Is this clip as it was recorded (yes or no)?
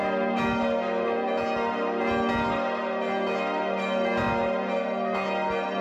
yes